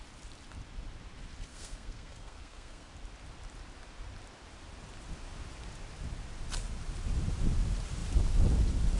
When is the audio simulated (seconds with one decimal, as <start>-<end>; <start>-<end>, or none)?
1.5-2.9